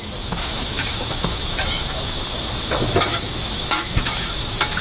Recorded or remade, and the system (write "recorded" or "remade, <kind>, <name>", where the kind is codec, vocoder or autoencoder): remade, autoencoder, DAC-VAE